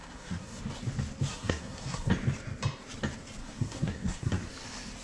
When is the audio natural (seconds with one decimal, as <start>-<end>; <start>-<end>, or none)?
0.6-1.3; 2.1-3.4; 4.5-5.0